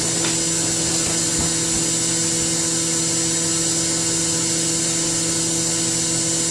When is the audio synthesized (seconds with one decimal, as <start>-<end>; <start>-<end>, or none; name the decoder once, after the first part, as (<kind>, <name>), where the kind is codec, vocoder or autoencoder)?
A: none